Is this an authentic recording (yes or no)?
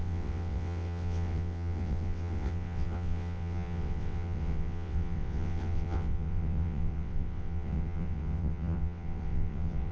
no